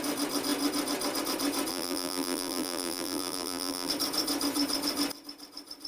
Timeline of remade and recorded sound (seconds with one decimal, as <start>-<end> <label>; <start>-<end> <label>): 0.0-1.7 recorded; 1.7-3.9 remade; 3.9-5.9 recorded